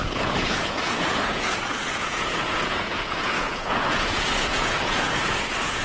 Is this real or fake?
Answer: fake